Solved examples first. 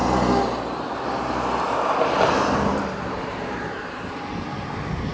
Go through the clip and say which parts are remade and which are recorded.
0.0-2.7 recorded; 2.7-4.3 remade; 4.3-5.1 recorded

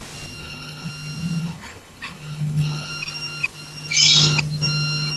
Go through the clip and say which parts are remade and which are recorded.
0.0-0.4 recorded; 0.4-0.9 remade; 0.9-1.4 recorded; 1.4-2.9 remade; 2.9-5.2 recorded

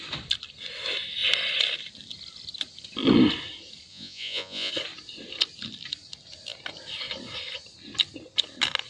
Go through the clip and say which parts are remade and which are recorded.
0.0-3.9 recorded; 3.9-4.7 remade; 4.7-8.9 recorded

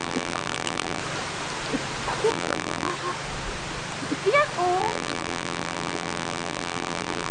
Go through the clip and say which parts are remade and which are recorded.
0.0-1.0 remade; 1.0-2.3 recorded; 2.3-2.9 remade; 2.9-4.8 recorded; 4.8-7.3 remade

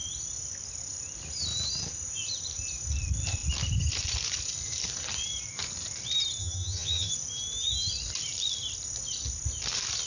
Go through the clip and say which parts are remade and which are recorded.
0.0-6.4 recorded; 6.4-7.1 remade; 7.1-10.1 recorded

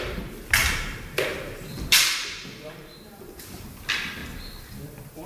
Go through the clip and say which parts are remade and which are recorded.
0.0-0.6 recorded; 0.6-3.8 remade; 3.8-5.3 recorded

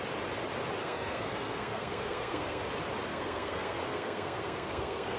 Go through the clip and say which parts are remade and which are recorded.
0.0-0.8 recorded; 0.8-2.6 remade; 2.6-3.1 recorded; 3.1-5.2 remade

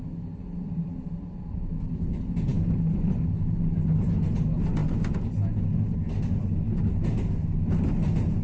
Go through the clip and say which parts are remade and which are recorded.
0.0-8.4 recorded